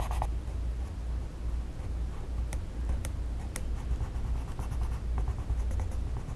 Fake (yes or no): no